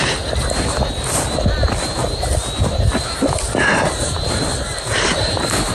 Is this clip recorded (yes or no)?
yes